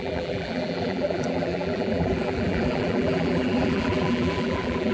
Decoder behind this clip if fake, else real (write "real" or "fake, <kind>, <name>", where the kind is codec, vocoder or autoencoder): fake, vocoder, BigVGAN v2